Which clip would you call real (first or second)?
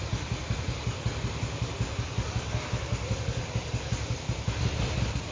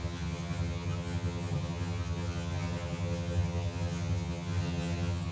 first